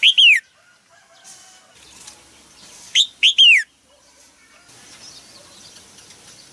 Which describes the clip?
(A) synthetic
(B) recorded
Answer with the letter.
B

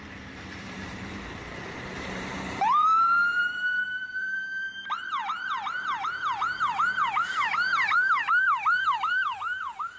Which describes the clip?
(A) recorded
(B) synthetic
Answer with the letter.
B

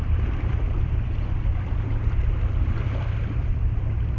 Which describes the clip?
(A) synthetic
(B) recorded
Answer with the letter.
A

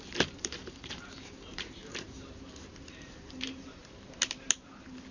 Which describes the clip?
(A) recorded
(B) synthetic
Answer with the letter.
B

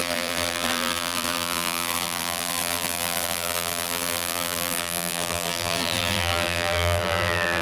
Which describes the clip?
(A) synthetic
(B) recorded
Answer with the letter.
A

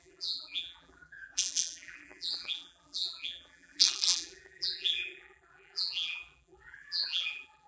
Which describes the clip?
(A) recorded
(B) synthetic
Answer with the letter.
B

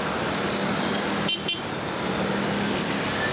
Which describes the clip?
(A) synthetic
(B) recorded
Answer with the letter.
B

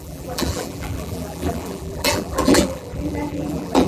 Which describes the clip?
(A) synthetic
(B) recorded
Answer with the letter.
A